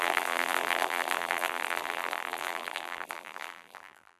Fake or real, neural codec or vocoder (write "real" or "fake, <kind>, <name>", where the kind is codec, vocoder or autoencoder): fake, vocoder, BigVGAN v2